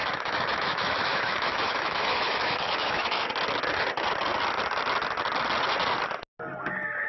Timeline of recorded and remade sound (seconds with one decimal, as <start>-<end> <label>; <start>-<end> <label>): 0.0-3.3 remade; 3.3-7.1 recorded